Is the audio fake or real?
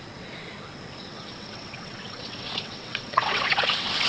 fake